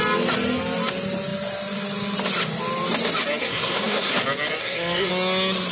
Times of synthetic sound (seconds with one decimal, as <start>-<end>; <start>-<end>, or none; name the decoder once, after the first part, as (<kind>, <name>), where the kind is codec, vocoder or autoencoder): 3.4-4.1 (codec, SNAC); 4.6-5.1